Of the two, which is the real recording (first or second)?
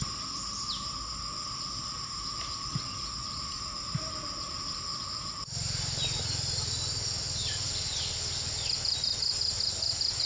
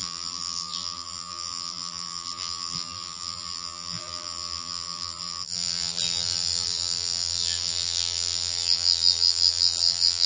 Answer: first